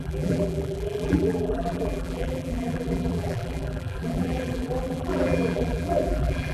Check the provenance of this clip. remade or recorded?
remade